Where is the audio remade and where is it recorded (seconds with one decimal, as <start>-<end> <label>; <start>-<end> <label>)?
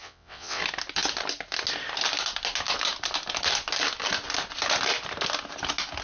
0.0-0.6 remade; 0.6-6.0 recorded